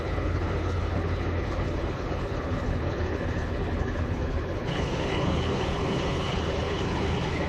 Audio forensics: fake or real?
fake